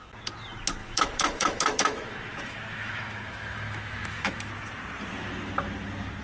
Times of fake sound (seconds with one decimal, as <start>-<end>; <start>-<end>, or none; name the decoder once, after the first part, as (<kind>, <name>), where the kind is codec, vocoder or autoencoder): 0.8-4.5 (autoencoder, DAC-VAE)